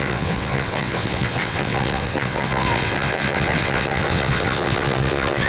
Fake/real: fake